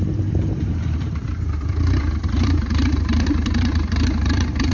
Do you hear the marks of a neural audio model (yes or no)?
yes